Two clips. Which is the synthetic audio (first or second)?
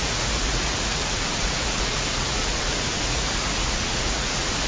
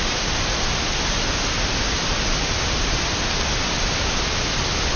first